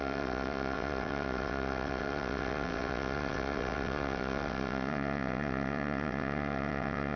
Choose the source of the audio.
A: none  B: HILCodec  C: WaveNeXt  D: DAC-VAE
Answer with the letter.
C